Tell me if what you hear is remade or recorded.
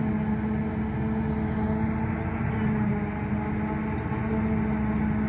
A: recorded